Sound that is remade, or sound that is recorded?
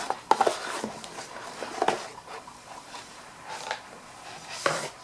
recorded